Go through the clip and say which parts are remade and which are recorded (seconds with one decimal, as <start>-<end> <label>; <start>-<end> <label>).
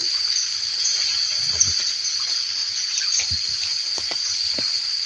0.0-2.6 recorded; 2.6-3.2 remade; 3.2-3.8 recorded; 3.8-4.4 remade; 4.4-5.1 recorded